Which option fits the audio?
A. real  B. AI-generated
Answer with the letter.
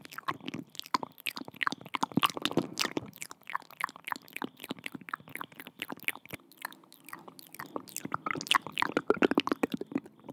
A